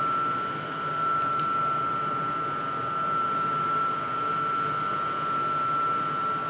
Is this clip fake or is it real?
real